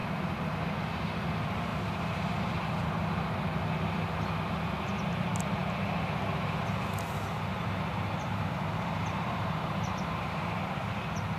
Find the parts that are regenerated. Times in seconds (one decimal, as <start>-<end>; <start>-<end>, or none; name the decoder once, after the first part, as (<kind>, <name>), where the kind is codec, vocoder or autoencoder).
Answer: 0.0-0.5 (vocoder, BigVGAN v2); 1.7-2.7; 7.5-10.6